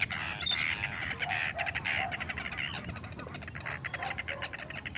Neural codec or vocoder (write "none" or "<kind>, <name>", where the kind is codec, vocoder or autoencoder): none